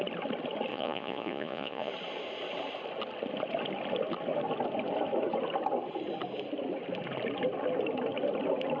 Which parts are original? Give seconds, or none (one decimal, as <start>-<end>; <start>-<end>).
0.0-0.7; 1.9-8.8